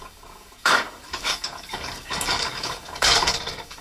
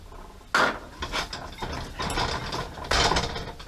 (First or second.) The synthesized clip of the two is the first